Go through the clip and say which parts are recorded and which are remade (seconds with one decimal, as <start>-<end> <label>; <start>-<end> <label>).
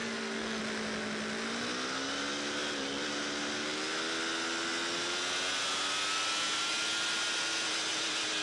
0.0-0.6 remade; 0.6-8.4 recorded